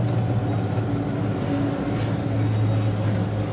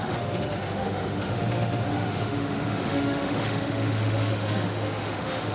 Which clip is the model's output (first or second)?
second